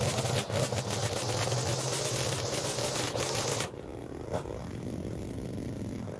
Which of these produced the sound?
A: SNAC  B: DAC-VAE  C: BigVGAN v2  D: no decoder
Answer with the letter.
D